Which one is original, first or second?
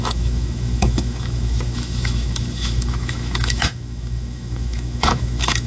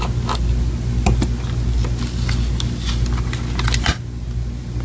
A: second